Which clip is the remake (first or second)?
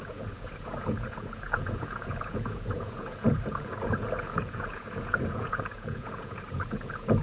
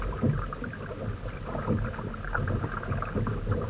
first